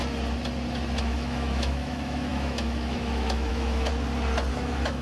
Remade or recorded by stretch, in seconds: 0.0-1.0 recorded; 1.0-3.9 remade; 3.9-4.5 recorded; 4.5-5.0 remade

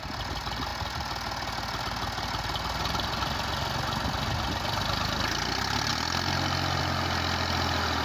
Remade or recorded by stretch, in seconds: 0.0-8.0 recorded